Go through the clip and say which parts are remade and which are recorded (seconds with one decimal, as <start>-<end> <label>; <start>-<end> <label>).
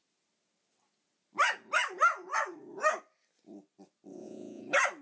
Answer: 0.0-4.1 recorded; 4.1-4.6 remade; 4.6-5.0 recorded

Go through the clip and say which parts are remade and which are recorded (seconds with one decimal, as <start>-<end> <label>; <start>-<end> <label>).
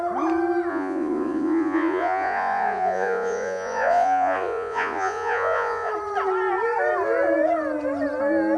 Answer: 0.0-0.7 recorded; 0.7-5.9 remade; 5.9-8.6 recorded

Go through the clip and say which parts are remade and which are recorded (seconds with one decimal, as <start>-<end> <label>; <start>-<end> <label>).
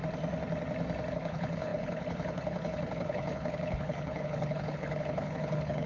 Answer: 0.0-1.1 recorded; 1.1-5.9 remade